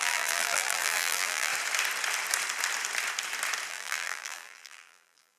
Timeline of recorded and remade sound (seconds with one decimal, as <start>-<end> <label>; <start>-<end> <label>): 0.0-1.5 remade; 1.5-3.7 recorded; 3.7-5.4 remade